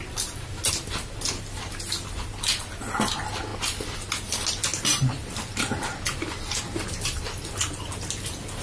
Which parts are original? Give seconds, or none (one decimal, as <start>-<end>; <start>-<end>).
0.0-8.6